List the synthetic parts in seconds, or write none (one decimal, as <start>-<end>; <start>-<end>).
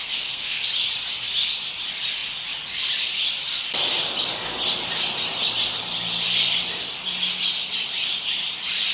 0.0-0.6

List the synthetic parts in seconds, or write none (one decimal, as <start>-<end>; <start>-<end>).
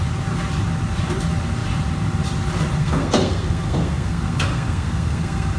2.8-5.6